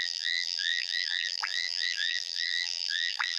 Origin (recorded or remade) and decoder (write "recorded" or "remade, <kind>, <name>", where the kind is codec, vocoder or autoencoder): remade, vocoder, BigVGAN v2